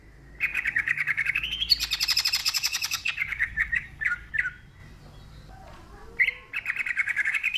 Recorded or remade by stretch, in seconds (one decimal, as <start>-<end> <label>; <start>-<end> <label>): 0.0-0.5 recorded; 0.5-1.7 remade; 1.7-2.4 recorded; 2.4-4.3 remade; 4.3-7.0 recorded; 7.0-7.6 remade